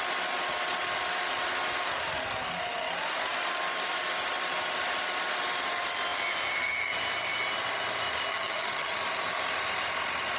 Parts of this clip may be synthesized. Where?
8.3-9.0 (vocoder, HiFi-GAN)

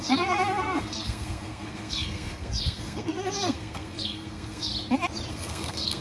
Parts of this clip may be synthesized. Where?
0.0-4.7 (codec, SNAC); 5.3-6.0

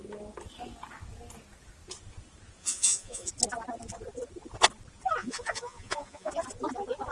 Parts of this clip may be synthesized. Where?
2.6-3.3 (vocoder, Vocos); 5.2-6.3

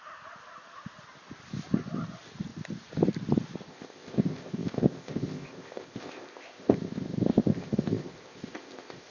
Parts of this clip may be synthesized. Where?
3.7-9.1 (codec, ZipCodec)

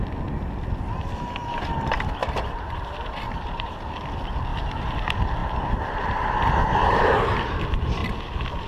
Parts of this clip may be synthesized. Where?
2.2-3.9 (vocoder, BigVGAN v2); 4.5-5.0

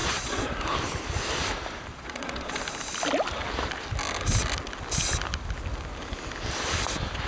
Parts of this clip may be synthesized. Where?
0.0-0.5 (vocoder, Vocos); 1.9-2.6